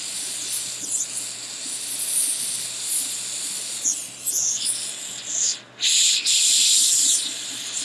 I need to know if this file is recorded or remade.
recorded